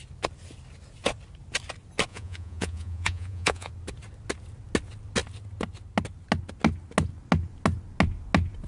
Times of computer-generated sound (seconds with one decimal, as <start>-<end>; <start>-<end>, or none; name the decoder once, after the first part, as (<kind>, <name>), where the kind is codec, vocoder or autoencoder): 2.1-3.7 (vocoder, Vocos)